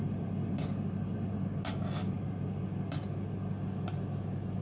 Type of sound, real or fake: real